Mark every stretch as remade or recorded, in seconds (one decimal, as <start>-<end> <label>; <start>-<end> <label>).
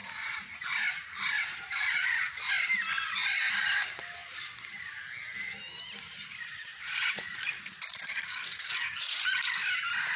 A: 0.0-2.5 remade; 2.5-6.7 recorded; 6.7-9.6 remade; 9.6-10.2 recorded